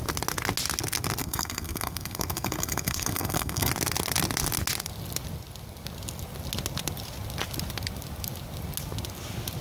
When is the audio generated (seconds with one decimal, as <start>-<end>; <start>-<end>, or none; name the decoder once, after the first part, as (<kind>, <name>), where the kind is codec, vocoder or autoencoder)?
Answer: 1.2-3.7 (codec, SNAC)

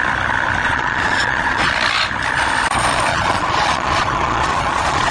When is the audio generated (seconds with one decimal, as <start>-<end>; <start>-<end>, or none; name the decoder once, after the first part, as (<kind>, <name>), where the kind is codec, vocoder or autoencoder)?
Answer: 0.6-1.7 (vocoder, Vocos); 3.1-5.1

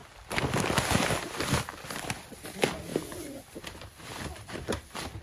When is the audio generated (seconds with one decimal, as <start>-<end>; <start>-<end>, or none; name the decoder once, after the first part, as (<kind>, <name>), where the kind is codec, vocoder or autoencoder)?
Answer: none